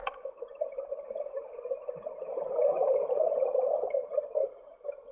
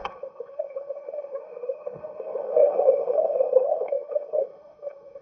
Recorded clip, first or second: first